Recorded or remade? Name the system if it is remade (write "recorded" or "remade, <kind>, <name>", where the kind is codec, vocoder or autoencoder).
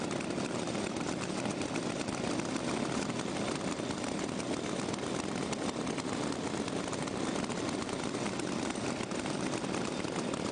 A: recorded